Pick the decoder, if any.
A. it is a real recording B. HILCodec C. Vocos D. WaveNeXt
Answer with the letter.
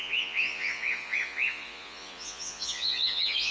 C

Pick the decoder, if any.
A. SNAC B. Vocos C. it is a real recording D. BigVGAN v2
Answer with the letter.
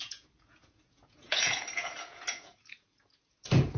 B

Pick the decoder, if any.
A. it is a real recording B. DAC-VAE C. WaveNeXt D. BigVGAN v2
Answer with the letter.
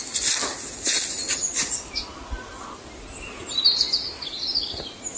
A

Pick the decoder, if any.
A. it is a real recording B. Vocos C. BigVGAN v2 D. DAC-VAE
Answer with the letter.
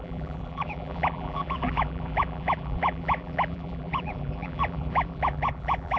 C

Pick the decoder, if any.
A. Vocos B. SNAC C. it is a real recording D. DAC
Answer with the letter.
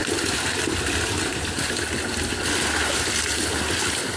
C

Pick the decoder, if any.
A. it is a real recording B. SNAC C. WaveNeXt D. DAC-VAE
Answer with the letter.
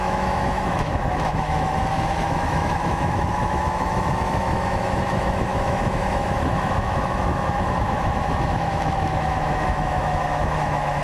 D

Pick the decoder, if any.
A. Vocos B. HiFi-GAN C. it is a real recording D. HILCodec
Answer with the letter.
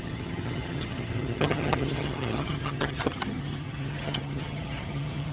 B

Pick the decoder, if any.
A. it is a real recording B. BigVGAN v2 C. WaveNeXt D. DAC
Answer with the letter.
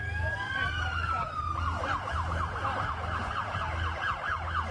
A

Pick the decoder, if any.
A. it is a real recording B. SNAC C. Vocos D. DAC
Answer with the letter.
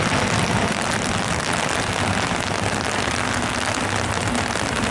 A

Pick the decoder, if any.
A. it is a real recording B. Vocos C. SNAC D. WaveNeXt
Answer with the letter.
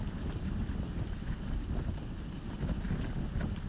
A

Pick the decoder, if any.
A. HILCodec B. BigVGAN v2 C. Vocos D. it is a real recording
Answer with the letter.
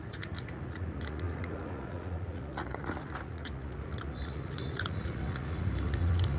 C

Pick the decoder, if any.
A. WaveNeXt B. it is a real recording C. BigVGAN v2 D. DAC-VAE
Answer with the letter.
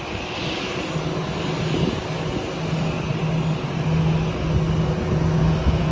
B